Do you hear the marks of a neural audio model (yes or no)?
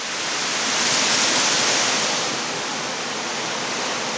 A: no